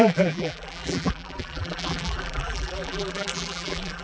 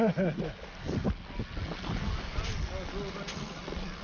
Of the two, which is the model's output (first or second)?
first